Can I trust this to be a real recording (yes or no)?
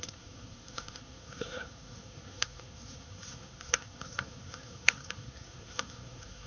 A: no